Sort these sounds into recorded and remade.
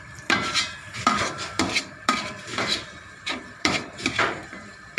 remade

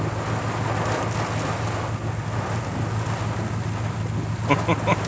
recorded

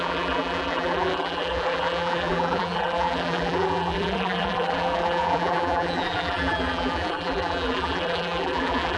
remade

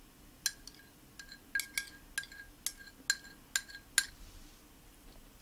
recorded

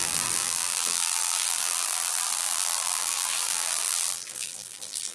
remade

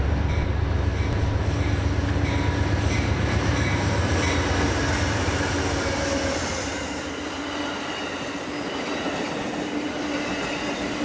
recorded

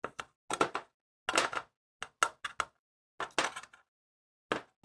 recorded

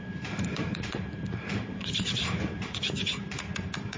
remade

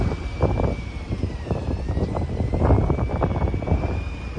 remade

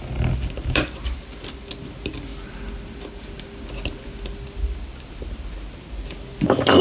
recorded